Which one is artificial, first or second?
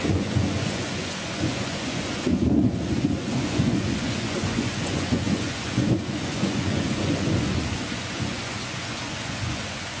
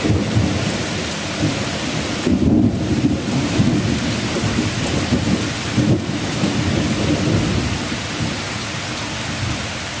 first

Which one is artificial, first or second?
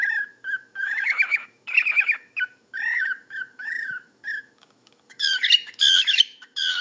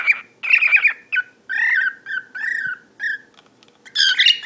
first